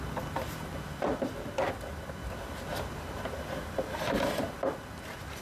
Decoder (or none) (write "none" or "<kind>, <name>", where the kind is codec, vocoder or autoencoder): none